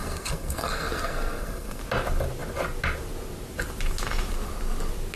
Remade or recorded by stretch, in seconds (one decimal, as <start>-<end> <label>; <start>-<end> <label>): 0.0-1.8 remade; 1.8-5.2 recorded